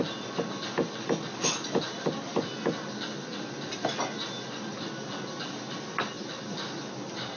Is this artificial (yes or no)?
no